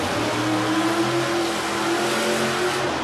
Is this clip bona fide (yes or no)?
yes